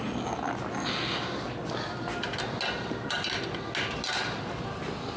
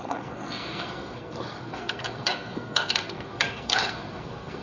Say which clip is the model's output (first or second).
second